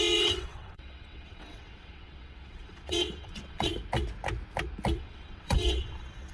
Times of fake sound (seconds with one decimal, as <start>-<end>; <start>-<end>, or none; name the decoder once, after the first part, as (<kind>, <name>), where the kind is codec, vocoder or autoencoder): 0.0-3.7 (vocoder, WaveNeXt); 5.0-6.3